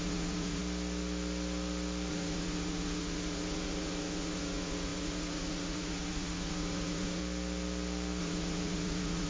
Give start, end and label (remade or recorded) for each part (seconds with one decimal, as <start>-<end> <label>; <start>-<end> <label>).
0.0-0.6 remade; 0.6-2.1 recorded; 2.1-7.2 remade; 7.2-8.2 recorded; 8.2-9.3 remade